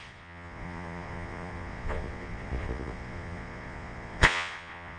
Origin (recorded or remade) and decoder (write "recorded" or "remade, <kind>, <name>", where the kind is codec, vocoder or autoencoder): remade, vocoder, Vocos